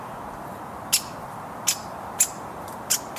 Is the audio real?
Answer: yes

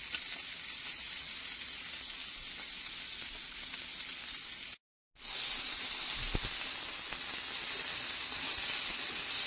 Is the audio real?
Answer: yes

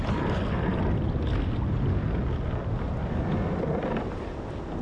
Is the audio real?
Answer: yes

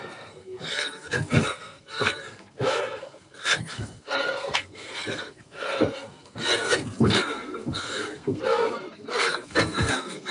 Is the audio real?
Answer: no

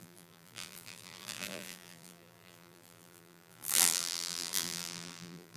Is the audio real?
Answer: no